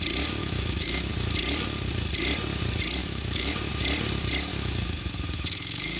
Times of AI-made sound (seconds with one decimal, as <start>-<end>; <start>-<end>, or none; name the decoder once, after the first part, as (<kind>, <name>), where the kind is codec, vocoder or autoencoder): 0.4-1.1 (autoencoder, DAC-VAE); 3.0-3.7; 4.5-6.0